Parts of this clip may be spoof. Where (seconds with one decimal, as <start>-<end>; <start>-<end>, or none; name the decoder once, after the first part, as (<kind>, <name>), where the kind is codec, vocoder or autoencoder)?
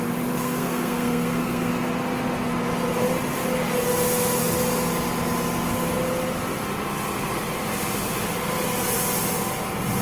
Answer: 0.4-1.7 (codec, SNAC)